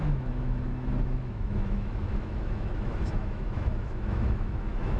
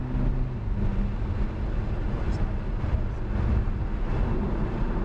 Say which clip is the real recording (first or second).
second